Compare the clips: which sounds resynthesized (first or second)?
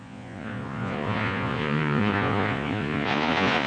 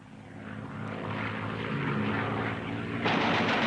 first